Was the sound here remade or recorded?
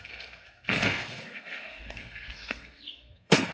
remade